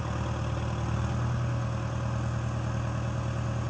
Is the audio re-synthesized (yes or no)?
no